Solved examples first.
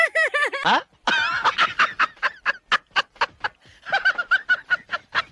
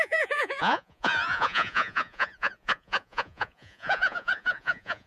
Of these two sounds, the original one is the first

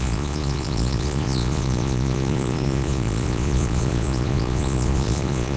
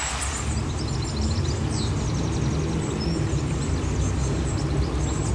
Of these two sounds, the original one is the second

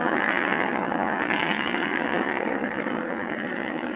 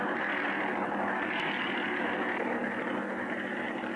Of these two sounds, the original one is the second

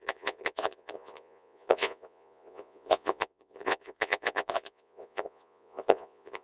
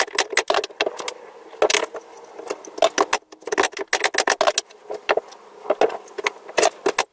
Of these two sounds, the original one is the second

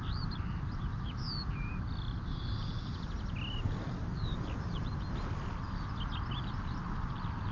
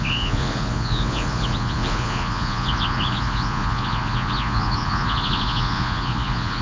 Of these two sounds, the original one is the first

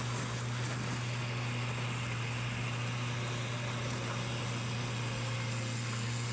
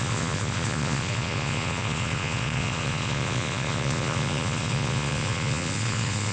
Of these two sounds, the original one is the first